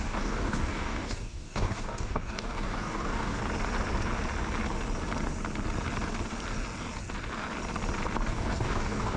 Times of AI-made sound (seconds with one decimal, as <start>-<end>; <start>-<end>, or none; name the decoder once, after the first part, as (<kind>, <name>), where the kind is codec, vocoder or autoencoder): 0.0-3.4 (codec, DAC); 8.3-9.2